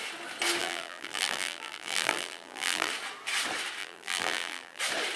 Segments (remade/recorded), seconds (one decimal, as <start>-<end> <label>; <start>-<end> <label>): 0.0-0.6 recorded; 0.6-2.9 remade; 2.9-3.8 recorded; 3.8-4.8 remade; 4.8-5.2 recorded